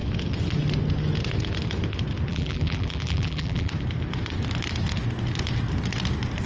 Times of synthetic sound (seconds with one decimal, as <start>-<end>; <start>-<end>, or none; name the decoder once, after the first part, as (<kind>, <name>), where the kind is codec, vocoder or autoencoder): 2.3-3.7 (vocoder, BigVGAN v2)